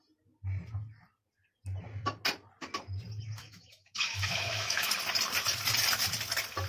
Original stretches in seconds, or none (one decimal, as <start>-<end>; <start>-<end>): 0.0-3.4; 4.9-6.7